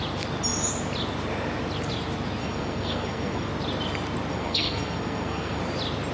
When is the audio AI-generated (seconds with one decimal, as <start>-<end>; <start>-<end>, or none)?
2.4-3.5; 4.3-5.6